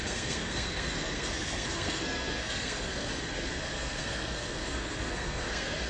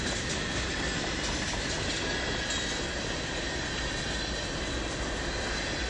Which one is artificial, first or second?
first